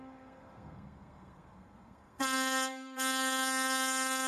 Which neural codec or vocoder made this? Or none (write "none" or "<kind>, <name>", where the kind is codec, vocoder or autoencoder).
codec, SNAC